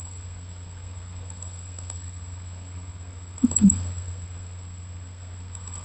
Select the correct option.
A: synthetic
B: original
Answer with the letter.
A